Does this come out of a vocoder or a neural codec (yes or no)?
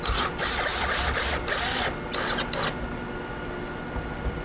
no